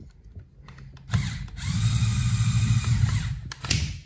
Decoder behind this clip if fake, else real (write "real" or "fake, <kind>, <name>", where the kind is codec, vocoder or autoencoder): real